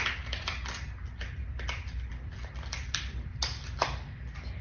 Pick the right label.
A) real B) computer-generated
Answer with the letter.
A